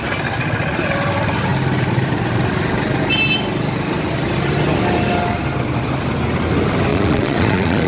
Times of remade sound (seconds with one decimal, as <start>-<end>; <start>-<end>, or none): 6.9-7.9